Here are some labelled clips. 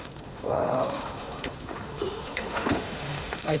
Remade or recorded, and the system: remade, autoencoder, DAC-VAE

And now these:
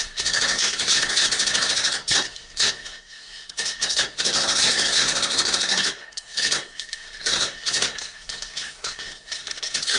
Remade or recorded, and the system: remade, codec, SNAC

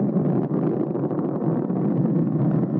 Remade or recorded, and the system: recorded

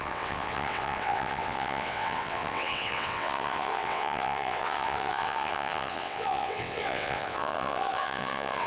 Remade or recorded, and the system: remade, vocoder, WaveNeXt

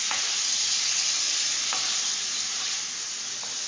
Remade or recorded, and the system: recorded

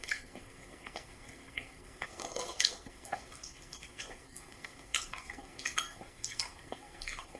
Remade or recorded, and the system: remade, codec, SNAC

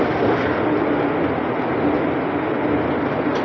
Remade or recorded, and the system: recorded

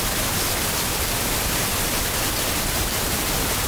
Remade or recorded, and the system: recorded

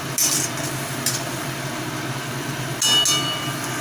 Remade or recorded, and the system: recorded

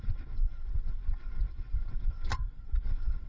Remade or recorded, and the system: remade, vocoder, WaveNeXt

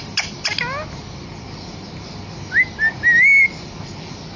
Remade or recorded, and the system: recorded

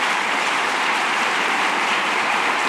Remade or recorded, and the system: remade, vocoder, BigVGAN v2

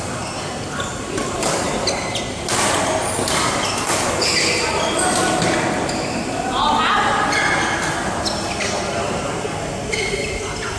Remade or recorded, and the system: recorded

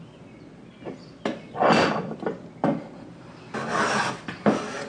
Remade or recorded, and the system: recorded